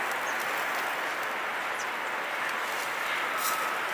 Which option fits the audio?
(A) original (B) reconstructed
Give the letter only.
A